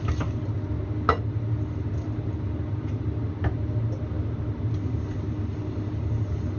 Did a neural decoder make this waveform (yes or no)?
no